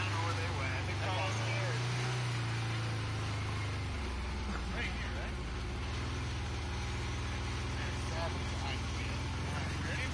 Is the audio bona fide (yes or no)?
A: yes